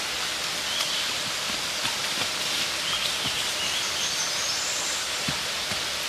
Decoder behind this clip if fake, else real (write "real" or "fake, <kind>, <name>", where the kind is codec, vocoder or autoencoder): fake, vocoder, BigVGAN v2